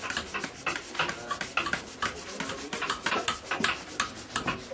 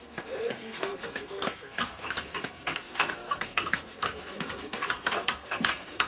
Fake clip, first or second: second